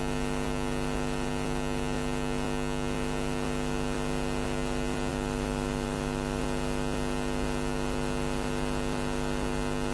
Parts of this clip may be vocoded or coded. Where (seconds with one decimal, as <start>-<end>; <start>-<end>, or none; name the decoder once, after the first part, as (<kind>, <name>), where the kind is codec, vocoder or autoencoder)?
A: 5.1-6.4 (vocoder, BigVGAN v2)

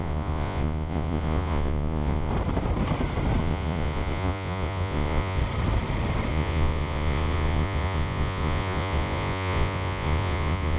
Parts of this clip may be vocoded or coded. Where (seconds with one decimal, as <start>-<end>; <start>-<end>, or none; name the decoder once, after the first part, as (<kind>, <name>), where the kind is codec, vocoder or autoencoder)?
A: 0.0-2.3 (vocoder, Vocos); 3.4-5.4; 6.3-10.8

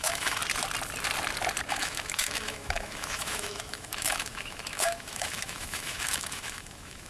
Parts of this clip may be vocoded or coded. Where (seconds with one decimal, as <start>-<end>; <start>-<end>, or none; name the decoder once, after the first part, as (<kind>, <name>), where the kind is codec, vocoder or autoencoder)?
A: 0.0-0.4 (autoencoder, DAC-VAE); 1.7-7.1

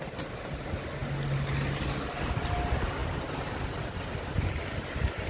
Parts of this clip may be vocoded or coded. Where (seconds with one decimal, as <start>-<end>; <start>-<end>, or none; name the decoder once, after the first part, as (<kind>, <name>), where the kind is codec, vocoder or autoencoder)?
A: 3.0-4.5 (vocoder, BigVGAN v2)